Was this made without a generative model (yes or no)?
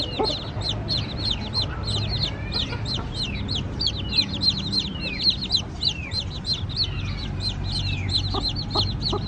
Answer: yes